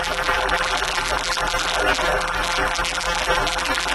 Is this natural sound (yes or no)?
no